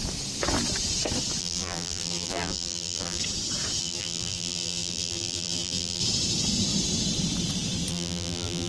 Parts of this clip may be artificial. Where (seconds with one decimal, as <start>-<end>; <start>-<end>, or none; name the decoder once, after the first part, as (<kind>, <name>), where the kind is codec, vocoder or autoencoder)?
1.4-3.2 (vocoder, BigVGAN v2); 3.8-6.0; 7.9-8.7